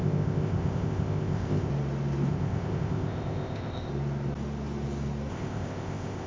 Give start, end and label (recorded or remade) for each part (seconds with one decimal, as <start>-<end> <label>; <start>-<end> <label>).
0.0-1.7 remade; 1.7-2.3 recorded; 2.3-3.9 remade; 3.9-5.3 recorded; 5.3-6.3 remade